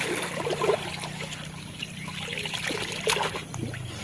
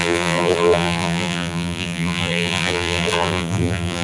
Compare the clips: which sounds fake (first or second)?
second